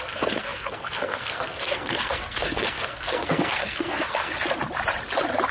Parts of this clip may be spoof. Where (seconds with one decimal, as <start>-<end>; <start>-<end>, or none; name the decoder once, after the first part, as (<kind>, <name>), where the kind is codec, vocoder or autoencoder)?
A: 0.0-4.3 (codec, SNAC)